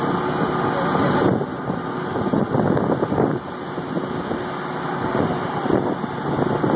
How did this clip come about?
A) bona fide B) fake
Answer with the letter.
A